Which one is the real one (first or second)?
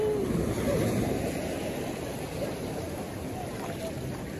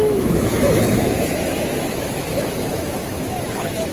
first